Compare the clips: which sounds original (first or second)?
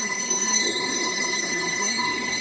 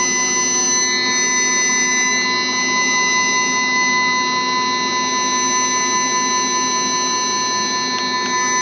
second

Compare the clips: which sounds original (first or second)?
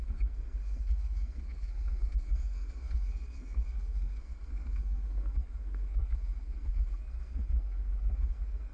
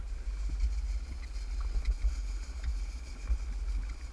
second